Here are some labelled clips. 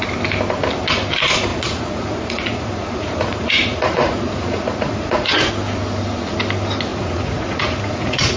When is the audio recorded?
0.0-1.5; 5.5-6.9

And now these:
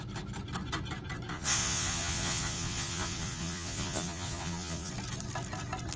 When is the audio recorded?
0.0-1.3; 4.9-6.0

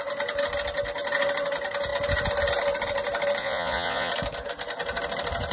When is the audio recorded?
0.0-3.4; 4.1-5.5

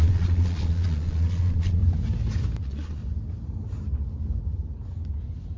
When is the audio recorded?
1.8-2.6; 3.0-5.6

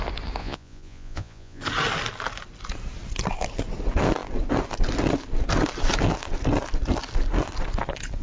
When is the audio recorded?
0.0-0.4; 1.6-8.2

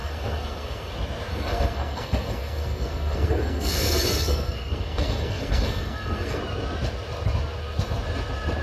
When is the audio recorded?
0.9-1.3; 6.4-8.6

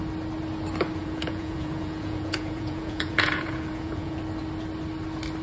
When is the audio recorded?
0.0-1.0; 4.2-5.4